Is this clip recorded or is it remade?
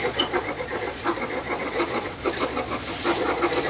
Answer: remade